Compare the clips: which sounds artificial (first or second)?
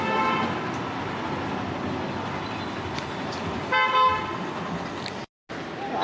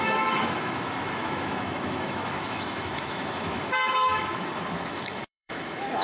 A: second